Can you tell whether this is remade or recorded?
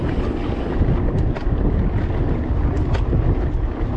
recorded